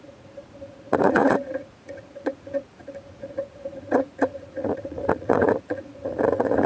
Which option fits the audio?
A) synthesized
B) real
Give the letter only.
A